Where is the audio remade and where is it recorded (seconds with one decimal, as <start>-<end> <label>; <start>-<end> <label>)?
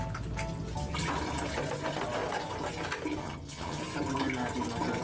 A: 0.0-3.2 recorded; 3.2-3.8 remade; 3.8-5.0 recorded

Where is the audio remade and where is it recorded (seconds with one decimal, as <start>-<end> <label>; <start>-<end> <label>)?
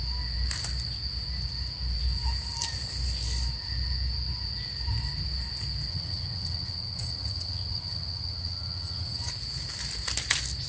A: 0.0-5.9 recorded; 5.9-9.3 remade; 9.3-10.7 recorded